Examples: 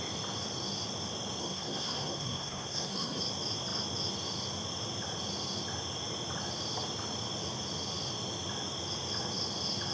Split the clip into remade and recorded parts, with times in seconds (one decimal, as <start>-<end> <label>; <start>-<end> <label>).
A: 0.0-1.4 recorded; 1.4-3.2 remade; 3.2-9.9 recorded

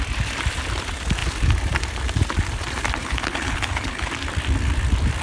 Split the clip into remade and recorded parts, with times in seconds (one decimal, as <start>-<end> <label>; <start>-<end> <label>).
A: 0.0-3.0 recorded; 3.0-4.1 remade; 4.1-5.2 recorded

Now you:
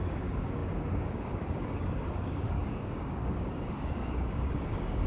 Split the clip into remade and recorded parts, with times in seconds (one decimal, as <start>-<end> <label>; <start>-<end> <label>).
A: 0.0-5.1 remade

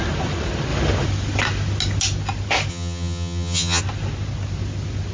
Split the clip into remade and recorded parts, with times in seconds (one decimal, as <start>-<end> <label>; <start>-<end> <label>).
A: 0.0-2.7 recorded; 2.7-3.8 remade; 3.8-5.1 recorded

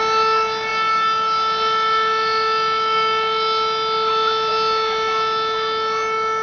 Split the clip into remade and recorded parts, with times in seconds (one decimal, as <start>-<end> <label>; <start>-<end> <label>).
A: 0.0-6.4 recorded

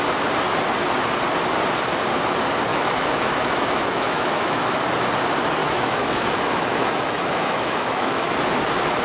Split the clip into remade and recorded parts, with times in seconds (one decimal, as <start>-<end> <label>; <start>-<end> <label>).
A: 0.0-2.7 recorded; 2.7-4.7 remade; 4.7-5.6 recorded; 5.6-8.3 remade; 8.3-9.0 recorded